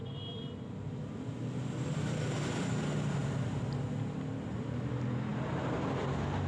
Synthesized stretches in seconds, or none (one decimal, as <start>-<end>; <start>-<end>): none